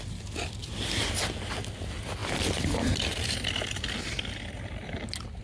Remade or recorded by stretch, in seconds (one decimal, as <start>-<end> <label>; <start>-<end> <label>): 0.0-5.4 recorded